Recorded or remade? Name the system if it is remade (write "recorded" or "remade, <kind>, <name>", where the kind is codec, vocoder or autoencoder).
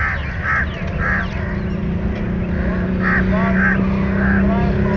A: recorded